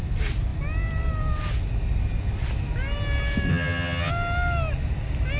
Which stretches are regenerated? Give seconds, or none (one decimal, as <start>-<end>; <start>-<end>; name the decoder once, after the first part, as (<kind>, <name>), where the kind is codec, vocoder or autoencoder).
3.5-4.1 (vocoder, HiFi-GAN)